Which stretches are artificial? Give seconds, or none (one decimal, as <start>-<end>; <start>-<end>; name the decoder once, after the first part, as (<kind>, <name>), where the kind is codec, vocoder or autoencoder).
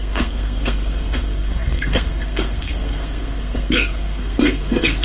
0.0-5.0 (codec, SNAC)